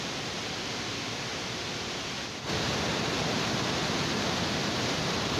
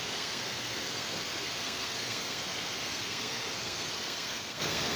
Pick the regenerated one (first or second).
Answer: second